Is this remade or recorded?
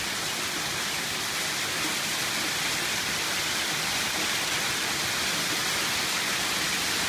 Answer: recorded